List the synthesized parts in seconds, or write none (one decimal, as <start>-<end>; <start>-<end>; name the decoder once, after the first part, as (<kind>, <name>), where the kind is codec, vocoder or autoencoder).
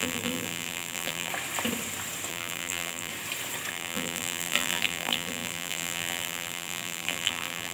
0.0-1.3 (vocoder, BigVGAN v2); 2.3-3.1; 3.7-7.7